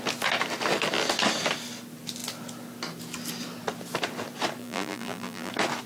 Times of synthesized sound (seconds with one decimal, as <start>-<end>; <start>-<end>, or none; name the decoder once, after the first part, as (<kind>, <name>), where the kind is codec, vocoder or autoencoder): 4.6-5.5 (vocoder, BigVGAN v2)